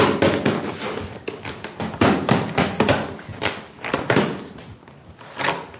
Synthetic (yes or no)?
no